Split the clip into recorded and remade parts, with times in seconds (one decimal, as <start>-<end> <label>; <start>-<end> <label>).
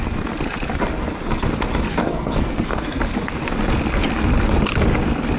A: 0.0-2.0 recorded; 2.0-3.0 remade; 3.0-5.4 recorded